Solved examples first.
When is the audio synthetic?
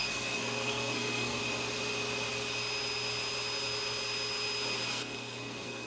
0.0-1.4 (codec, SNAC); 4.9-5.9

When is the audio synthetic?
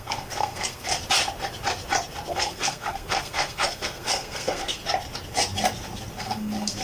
0.0-0.9 (codec, SNAC); 2.3-4.8; 6.2-6.8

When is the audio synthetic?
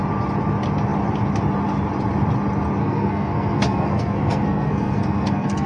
2.8-5.7 (codec, SNAC)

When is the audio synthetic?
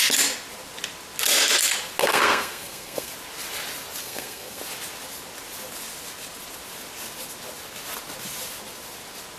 2.0-3.1 (codec, SNAC); 4.0-4.6